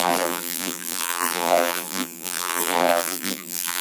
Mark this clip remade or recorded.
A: remade